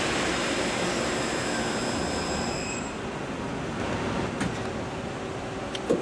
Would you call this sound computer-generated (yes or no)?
no